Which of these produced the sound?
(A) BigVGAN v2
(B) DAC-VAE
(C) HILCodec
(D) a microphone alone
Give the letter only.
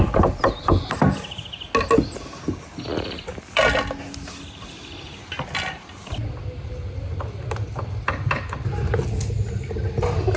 D